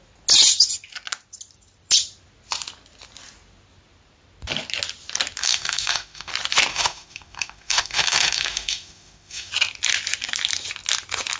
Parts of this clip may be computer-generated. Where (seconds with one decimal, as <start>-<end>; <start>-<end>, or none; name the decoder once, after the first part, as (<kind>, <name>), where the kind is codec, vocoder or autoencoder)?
5.4-6.3 (autoencoder, DAC-VAE); 6.7-9.5